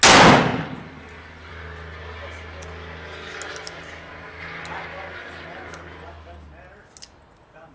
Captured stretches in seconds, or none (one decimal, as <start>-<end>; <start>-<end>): 0.0-7.7

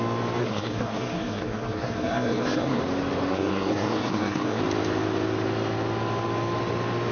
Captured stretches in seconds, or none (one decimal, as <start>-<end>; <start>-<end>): 0.0-0.4; 2.8-3.3; 4.6-7.1

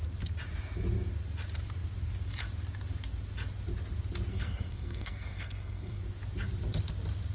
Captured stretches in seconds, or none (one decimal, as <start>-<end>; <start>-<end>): 0.0-4.3; 6.0-7.3

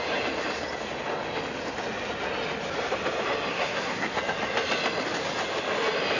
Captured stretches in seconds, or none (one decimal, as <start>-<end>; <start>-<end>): 0.0-3.5; 4.2-6.2

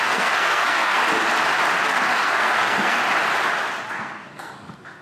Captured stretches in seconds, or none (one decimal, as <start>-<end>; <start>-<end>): 1.0-1.8; 3.0-3.9

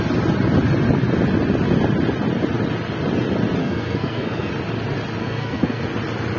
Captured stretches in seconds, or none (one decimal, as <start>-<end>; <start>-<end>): 0.0-3.6; 4.5-5.2; 5.8-6.4

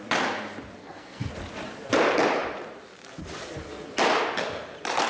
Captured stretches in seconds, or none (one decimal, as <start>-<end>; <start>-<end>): 0.0-0.8; 1.3-5.1

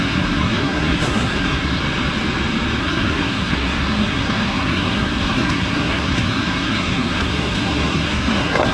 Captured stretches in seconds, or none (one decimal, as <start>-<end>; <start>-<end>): 1.8-2.8